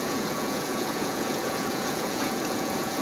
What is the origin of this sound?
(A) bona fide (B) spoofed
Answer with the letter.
B